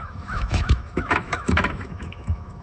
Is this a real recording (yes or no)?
no